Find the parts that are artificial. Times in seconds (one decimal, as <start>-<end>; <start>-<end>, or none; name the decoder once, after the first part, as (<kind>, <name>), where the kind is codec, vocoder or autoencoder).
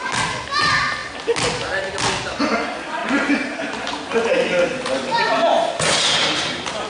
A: none